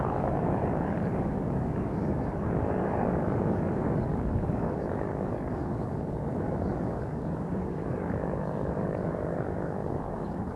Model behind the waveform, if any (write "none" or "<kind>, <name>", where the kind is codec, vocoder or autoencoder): codec, DAC